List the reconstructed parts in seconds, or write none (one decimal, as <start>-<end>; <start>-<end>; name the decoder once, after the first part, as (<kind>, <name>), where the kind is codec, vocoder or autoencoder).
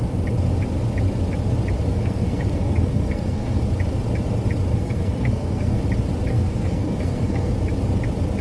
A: 1.9-3.6 (codec, SNAC); 4.7-5.8; 6.3-7.5